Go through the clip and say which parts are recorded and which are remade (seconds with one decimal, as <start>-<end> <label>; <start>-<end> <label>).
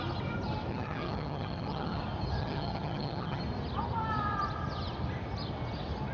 0.0-0.7 recorded; 0.7-2.0 remade; 2.0-2.4 recorded; 2.4-3.4 remade; 3.4-6.1 recorded